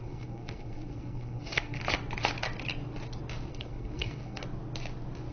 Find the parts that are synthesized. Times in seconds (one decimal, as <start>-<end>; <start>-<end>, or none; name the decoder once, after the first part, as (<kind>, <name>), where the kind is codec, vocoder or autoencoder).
0.0-1.8 (codec, SNAC); 3.5-4.4